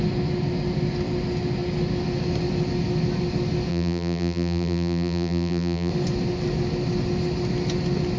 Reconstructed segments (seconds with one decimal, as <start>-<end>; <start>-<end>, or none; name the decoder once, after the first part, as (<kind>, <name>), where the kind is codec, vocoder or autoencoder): 3.7-5.9 (vocoder, BigVGAN v2)